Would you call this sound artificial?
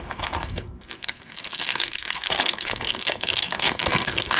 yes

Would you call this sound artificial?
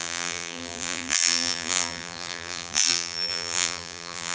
yes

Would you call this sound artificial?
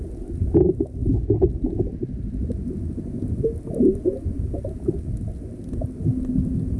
no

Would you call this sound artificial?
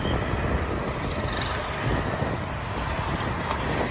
no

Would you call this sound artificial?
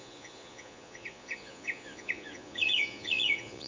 yes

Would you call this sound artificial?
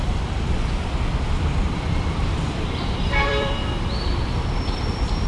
yes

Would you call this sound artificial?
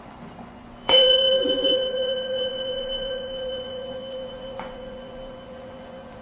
yes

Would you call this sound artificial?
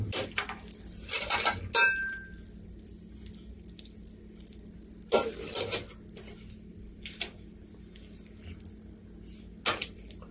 no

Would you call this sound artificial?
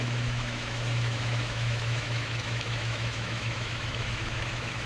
yes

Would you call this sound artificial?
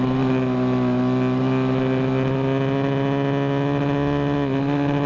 no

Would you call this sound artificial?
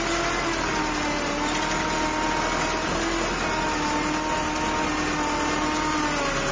no